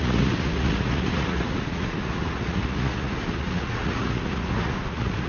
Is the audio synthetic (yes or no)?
yes